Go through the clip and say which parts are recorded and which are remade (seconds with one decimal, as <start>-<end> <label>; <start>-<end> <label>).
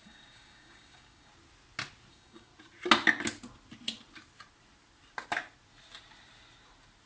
0.0-1.3 remade; 1.3-2.1 recorded; 2.1-2.5 remade; 2.5-7.1 recorded